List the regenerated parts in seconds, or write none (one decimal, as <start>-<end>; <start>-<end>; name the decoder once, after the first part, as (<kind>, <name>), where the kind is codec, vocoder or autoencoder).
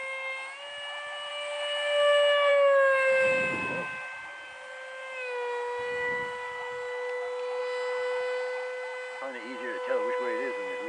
none